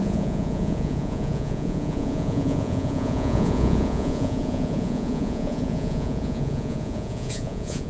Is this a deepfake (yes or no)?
yes